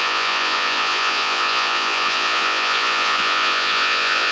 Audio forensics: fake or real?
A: fake